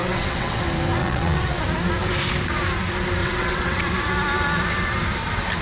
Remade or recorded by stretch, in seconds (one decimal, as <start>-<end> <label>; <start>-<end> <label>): 0.0-0.6 remade; 0.6-1.0 recorded; 1.0-1.6 remade; 1.6-3.2 recorded; 3.2-3.9 remade; 3.9-5.6 recorded